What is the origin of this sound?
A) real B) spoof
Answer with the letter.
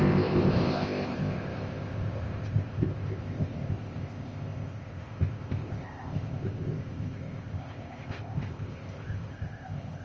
B